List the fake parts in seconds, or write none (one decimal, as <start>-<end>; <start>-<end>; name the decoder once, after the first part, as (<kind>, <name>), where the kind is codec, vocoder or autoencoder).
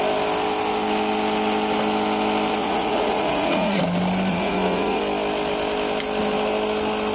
2.6-3.8 (vocoder, Vocos); 4.3-5.0